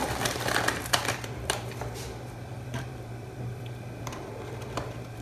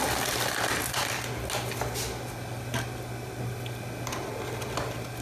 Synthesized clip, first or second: first